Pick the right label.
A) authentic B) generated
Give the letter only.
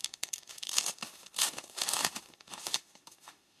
B